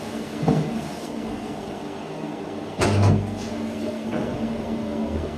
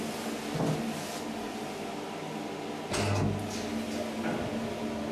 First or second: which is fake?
first